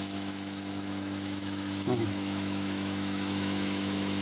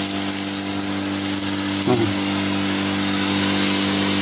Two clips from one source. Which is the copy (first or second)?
first